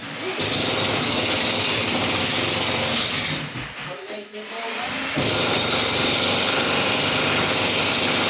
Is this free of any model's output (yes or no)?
yes